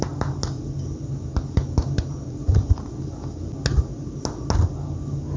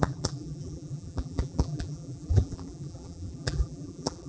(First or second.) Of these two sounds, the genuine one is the first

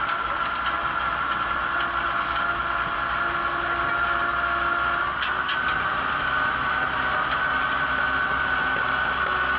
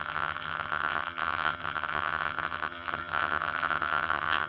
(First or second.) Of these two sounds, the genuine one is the first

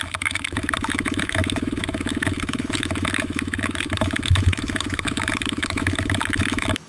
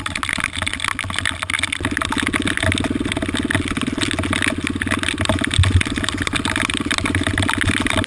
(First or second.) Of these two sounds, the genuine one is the second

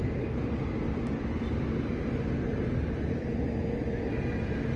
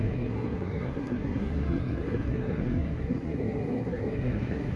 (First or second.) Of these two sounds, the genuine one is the first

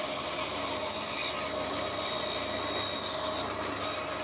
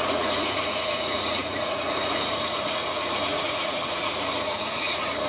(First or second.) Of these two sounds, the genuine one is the first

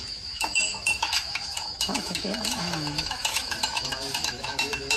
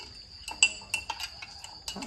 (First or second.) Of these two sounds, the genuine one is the second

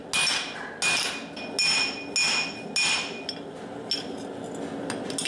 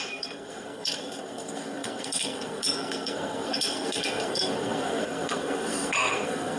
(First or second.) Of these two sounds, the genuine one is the first